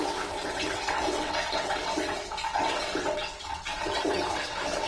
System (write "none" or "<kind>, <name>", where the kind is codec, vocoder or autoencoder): vocoder, WaveNeXt